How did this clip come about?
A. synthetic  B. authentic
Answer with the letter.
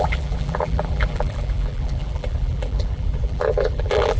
A